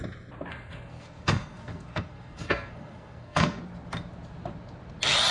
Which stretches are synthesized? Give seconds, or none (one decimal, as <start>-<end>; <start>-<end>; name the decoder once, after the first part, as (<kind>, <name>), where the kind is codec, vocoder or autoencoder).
0.5-3.6 (codec, SNAC)